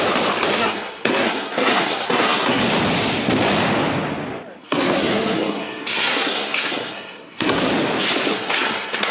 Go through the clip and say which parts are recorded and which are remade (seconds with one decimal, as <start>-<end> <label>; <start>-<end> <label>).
0.0-0.5 recorded; 0.5-2.6 remade; 2.6-4.6 recorded; 4.6-7.7 remade; 7.7-8.3 recorded; 8.3-9.1 remade